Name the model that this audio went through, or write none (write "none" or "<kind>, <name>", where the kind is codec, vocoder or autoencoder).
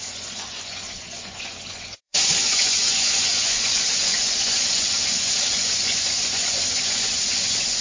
vocoder, Vocos